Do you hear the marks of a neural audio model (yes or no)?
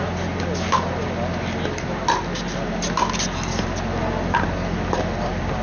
no